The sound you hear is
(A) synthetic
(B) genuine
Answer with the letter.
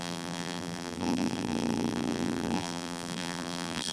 A